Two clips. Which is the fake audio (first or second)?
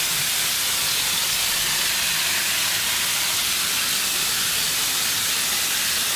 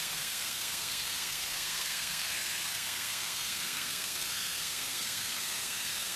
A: second